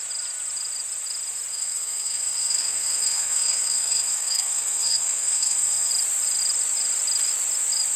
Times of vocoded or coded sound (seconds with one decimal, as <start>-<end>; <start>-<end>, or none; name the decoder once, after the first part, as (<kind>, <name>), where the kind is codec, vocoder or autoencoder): 1.5-5.9 (codec, SNAC)